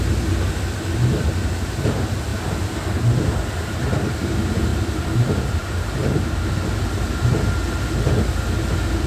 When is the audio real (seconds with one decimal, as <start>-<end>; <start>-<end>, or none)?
0.0-4.7; 6.5-9.1